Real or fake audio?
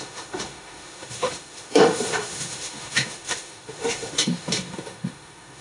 fake